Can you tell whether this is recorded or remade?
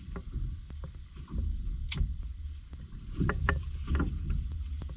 remade